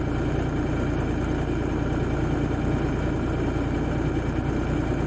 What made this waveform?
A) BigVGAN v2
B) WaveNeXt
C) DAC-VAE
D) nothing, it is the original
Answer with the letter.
D